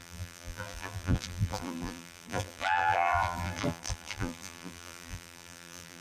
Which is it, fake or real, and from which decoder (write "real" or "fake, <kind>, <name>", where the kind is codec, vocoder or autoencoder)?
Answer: fake, vocoder, BigVGAN v2